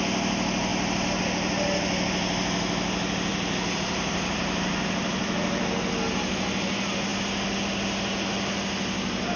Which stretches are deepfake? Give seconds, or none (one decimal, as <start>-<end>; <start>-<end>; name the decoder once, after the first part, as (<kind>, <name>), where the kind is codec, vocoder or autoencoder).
3.3-5.4 (vocoder, BigVGAN v2)